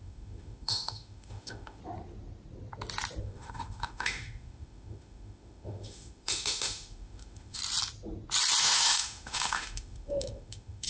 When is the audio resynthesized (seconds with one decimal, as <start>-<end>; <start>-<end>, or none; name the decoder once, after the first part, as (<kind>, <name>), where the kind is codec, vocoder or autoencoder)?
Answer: 0.0-1.8 (autoencoder, DAC-VAE); 3.2-7.6; 8.6-10.9